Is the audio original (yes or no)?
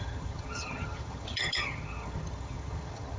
no